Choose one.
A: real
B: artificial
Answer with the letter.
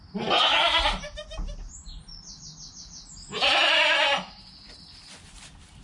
A